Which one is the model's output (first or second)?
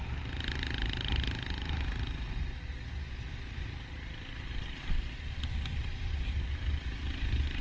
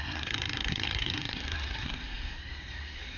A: second